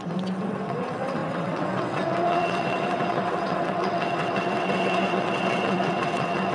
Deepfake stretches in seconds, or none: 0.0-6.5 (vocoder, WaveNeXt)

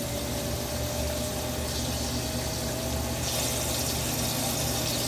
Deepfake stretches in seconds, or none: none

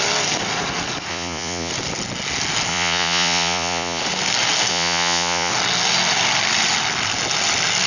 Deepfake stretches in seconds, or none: 1.1-1.7 (vocoder, Vocos); 2.7-4.0; 4.7-5.5

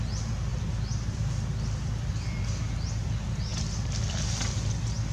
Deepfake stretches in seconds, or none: 0.5-2.4 (vocoder, BigVGAN v2)